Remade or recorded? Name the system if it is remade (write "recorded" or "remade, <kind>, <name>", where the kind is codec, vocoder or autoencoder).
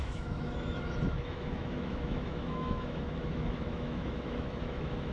remade, autoencoder, DAC-VAE